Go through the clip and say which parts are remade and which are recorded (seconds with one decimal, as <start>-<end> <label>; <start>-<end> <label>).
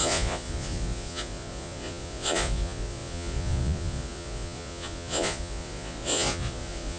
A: 0.0-7.0 remade